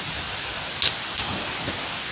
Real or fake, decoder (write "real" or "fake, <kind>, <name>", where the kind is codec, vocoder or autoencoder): real